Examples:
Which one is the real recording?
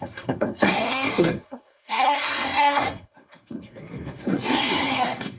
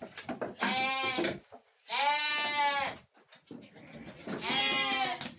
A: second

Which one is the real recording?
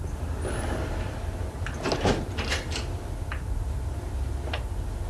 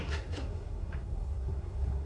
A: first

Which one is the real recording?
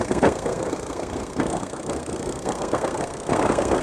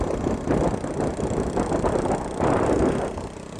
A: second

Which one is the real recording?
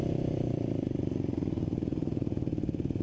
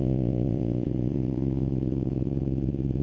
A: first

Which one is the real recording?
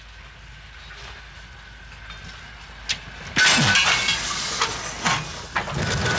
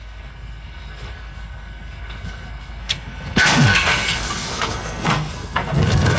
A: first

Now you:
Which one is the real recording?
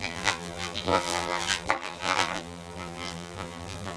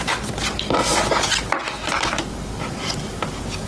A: second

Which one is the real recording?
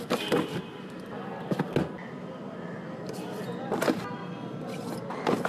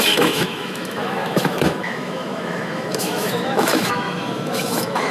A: first